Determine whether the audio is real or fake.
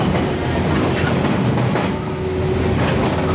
real